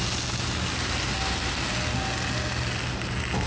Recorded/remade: recorded